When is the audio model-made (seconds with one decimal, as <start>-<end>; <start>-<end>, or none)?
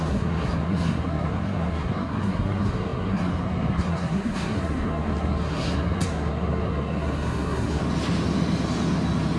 0.0-7.8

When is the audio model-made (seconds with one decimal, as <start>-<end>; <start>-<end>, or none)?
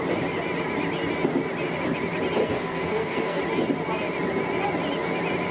2.4-3.4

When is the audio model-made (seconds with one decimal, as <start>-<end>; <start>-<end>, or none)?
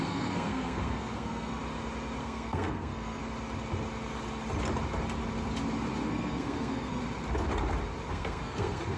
0.0-1.6; 2.2-3.2; 6.1-7.0; 8.1-9.0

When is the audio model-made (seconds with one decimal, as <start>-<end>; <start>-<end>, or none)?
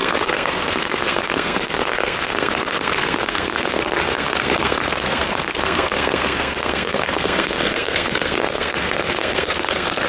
0.0-10.1